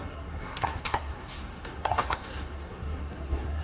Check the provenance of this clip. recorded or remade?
remade